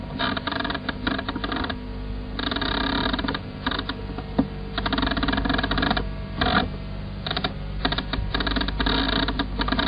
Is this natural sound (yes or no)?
yes